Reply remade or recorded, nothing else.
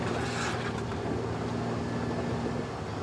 recorded